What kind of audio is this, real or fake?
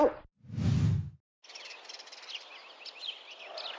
real